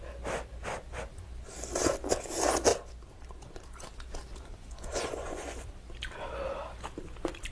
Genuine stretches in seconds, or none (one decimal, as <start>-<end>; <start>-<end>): 0.0-4.5; 5.7-7.5